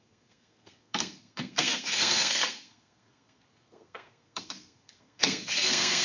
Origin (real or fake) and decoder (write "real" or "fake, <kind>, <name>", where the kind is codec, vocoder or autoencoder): fake, codec, SNAC